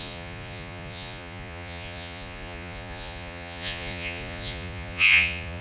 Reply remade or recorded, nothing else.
remade